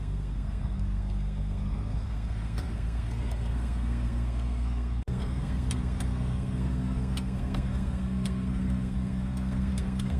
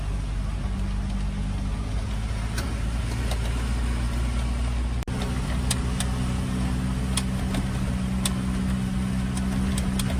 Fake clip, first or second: first